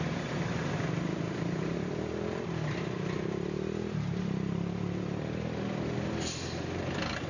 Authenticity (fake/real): real